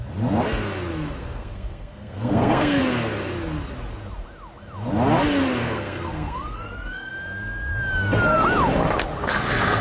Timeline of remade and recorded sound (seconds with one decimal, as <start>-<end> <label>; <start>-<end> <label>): 0.0-1.2 recorded; 1.2-2.8 remade; 2.8-5.6 recorded; 5.6-7.1 remade; 7.1-9.8 recorded